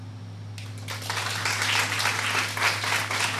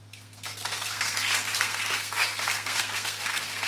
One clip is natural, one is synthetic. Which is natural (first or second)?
first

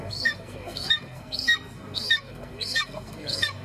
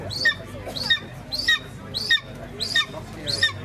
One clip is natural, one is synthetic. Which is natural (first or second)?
second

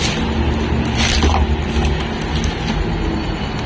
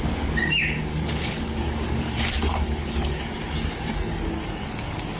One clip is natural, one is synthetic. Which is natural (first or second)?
first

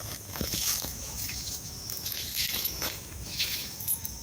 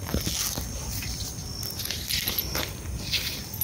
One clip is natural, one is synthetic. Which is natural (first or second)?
second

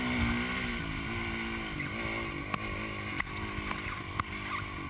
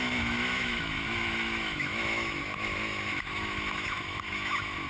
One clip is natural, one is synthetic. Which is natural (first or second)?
first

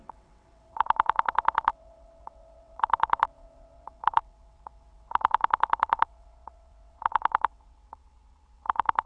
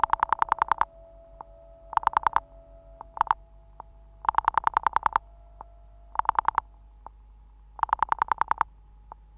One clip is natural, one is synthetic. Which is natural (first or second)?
second